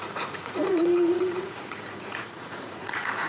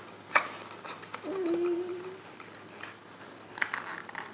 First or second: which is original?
second